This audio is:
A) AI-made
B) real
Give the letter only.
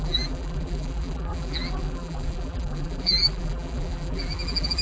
A